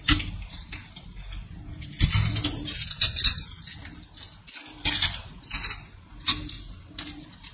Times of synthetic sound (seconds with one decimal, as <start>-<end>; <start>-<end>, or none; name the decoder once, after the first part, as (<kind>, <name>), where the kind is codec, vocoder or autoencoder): none